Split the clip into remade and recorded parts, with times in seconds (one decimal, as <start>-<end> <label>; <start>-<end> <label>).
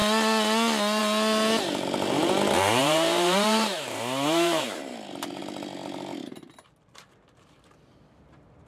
0.0-2.8 recorded; 2.8-5.4 remade; 5.4-8.7 recorded